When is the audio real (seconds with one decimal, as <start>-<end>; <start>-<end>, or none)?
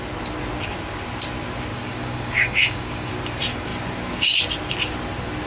0.0-1.7; 3.1-5.5